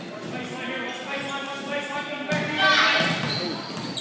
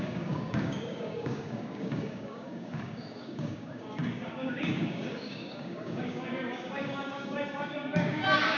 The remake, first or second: second